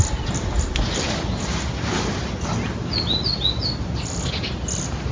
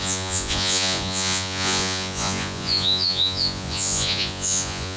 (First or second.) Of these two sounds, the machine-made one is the second